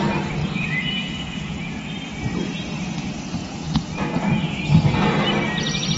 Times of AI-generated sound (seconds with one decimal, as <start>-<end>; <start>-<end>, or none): 0.4-1.8; 3.4-4.6